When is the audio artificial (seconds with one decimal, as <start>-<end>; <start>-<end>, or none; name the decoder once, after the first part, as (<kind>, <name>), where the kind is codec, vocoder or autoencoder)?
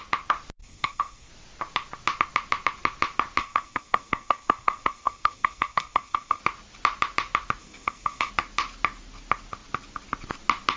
0.6-1.3 (codec, SNAC); 3.4-6.4; 7.6-8.3